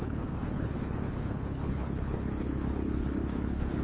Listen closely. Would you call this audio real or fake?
fake